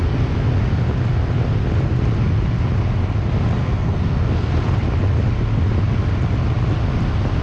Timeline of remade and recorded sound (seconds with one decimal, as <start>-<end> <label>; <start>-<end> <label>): 0.0-3.6 recorded; 3.6-4.5 remade; 4.5-7.4 recorded